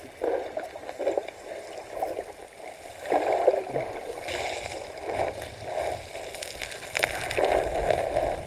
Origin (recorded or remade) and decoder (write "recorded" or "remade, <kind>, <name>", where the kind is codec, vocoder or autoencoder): recorded